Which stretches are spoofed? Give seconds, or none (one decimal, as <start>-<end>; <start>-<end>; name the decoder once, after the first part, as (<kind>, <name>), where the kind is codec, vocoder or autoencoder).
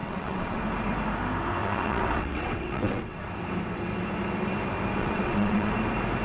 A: 0.0-0.6 (vocoder, WaveNeXt); 1.6-3.2; 5.0-5.7